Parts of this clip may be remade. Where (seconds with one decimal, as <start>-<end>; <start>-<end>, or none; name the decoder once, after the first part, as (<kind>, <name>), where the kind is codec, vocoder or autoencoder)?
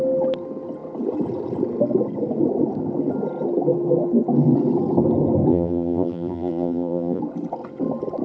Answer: 5.5-7.2 (vocoder, BigVGAN v2)